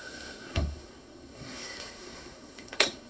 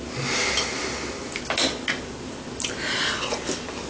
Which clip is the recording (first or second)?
second